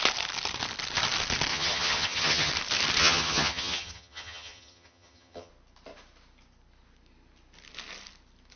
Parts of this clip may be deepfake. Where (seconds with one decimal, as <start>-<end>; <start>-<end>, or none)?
1.5-2.5; 3.0-5.5